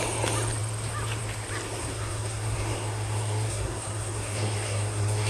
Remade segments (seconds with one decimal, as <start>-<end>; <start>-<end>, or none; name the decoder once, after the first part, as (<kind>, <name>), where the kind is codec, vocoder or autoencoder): 1.8-5.3 (codec, SNAC)